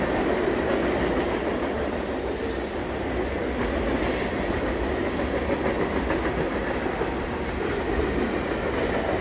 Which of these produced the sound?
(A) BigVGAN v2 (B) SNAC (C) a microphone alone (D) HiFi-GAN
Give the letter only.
C